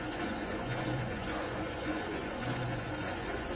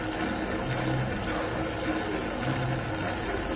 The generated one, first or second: first